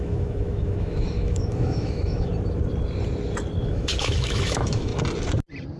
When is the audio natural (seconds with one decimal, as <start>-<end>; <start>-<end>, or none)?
2.3-3.6; 4.9-5.8